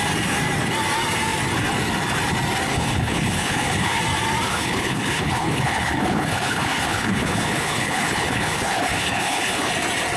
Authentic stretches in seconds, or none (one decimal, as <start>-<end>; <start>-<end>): 0.0-2.7; 4.0-4.5; 9.7-10.2